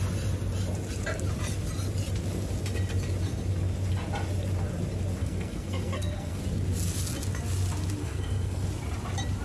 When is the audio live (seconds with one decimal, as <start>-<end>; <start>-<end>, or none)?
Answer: 0.0-5.2; 6.4-8.0; 8.7-9.4

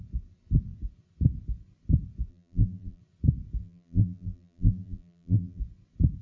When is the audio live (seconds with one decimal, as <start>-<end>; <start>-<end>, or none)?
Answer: 0.0-2.3; 3.0-3.6; 5.6-6.2